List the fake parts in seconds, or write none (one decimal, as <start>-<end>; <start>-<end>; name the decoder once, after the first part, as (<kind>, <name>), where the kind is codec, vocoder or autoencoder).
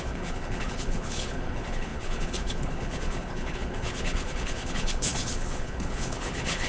0.0-6.7 (codec, HILCodec)